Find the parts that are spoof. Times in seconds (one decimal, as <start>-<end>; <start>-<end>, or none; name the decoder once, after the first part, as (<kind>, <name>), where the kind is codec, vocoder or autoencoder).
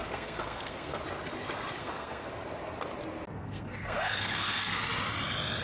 0.0-1.0 (codec, SNAC); 1.8-2.3; 3.4-4.8